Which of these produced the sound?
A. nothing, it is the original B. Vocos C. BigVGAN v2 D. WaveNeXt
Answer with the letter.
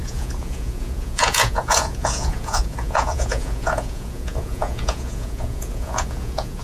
B